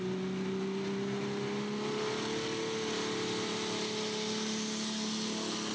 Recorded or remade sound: recorded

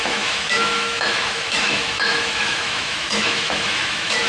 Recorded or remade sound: remade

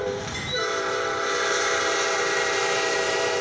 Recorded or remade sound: remade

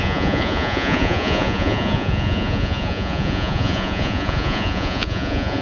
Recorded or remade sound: remade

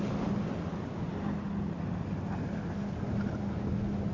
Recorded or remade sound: recorded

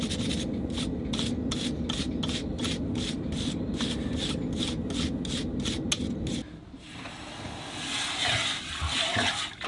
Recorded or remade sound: recorded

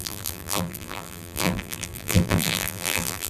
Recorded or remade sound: remade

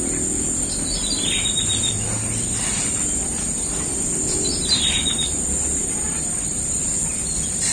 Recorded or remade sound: remade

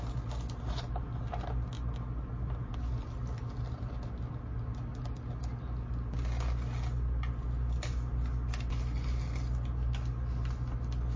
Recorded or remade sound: recorded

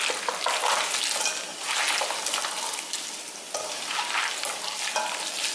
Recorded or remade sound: recorded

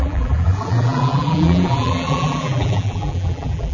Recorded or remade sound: remade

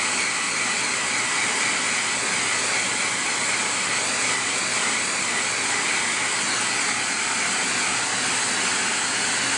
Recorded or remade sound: recorded